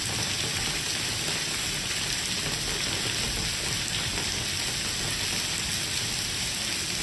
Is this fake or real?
real